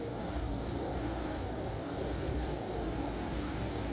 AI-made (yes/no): yes